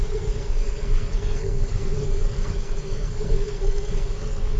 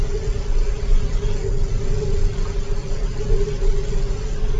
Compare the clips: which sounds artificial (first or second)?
first